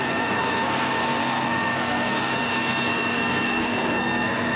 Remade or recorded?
remade